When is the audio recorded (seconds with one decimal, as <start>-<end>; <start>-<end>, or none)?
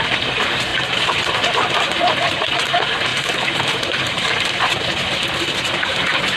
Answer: 0.0-0.7; 1.6-6.4